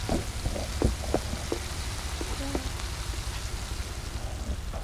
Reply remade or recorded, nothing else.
recorded